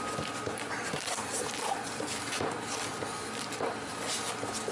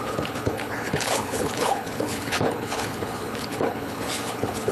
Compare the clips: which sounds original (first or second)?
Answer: first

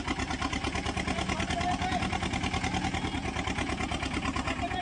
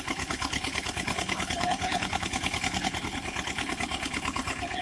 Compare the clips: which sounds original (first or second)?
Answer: first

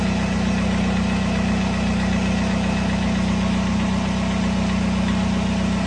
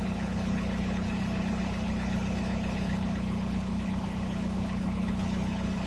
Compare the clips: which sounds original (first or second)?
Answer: first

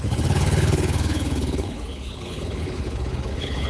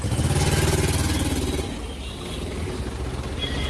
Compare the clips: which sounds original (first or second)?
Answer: second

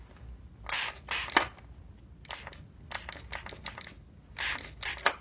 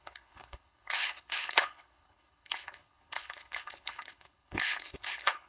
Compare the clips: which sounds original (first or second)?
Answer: first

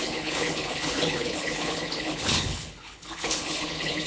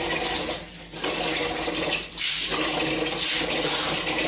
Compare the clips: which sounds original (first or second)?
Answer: second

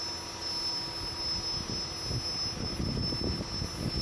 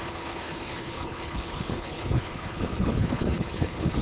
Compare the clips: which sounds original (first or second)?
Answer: first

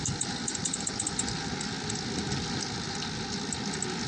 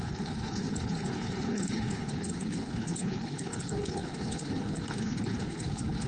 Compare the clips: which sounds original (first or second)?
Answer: first